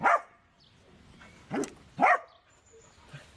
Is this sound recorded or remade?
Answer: recorded